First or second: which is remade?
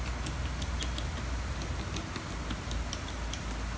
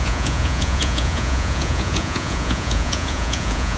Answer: second